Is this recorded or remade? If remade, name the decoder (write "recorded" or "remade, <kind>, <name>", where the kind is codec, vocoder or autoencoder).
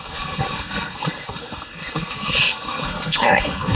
remade, codec, SNAC